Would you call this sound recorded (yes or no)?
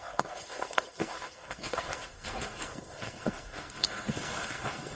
no